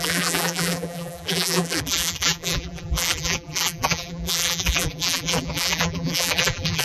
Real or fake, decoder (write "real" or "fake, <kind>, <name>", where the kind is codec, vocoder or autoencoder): fake, vocoder, BigVGAN v2